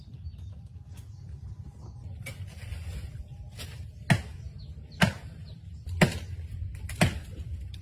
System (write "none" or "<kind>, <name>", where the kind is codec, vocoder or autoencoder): none